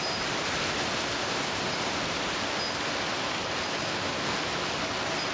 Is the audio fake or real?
real